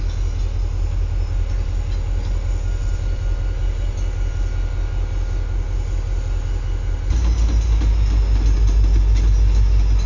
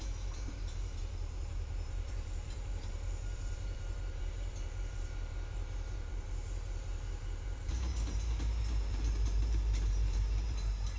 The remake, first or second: second